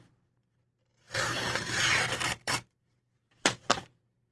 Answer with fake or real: fake